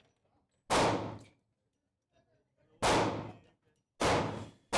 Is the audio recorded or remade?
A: recorded